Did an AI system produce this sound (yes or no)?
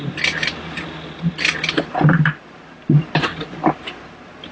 no